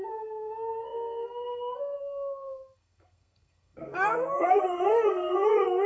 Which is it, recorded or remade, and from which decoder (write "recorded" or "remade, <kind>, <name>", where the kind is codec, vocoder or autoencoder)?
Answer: remade, codec, SNAC